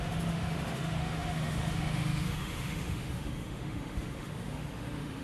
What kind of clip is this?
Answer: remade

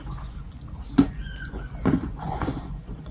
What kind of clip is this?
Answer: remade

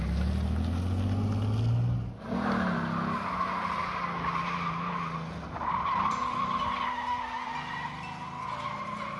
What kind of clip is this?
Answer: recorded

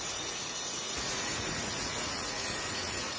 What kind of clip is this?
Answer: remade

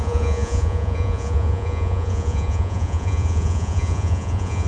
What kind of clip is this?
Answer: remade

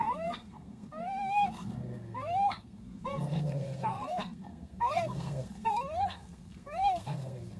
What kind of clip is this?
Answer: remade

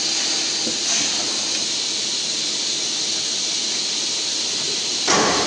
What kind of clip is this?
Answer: recorded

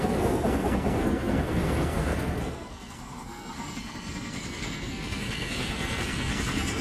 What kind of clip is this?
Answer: remade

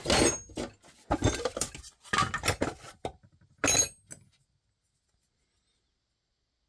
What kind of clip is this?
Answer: recorded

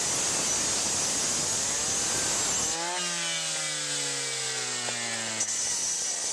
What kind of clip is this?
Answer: recorded